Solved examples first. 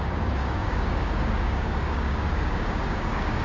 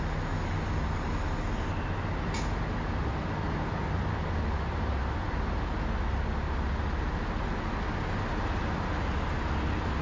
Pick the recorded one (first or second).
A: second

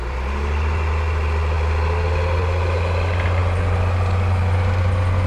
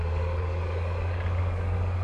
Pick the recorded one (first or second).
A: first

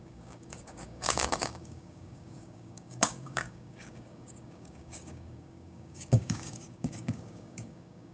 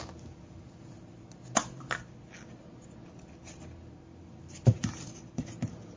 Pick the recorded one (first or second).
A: second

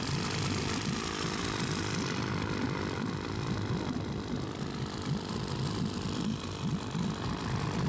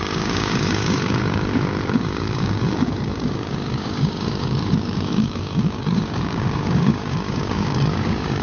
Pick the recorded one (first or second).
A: first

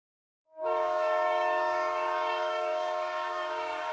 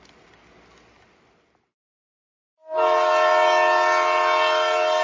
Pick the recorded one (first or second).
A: second